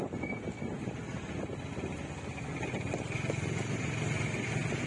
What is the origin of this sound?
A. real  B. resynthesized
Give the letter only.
A